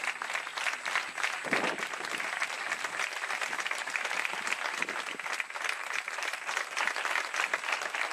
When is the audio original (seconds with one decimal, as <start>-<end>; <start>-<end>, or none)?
0.0-8.1